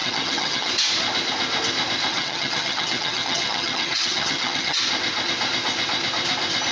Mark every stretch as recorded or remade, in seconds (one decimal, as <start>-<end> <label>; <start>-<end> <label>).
0.0-0.7 remade; 0.7-2.1 recorded; 2.1-4.8 remade; 4.8-6.7 recorded